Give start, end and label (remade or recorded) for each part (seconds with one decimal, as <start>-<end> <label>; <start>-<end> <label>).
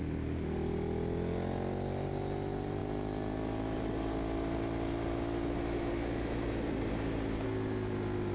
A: 0.0-8.3 recorded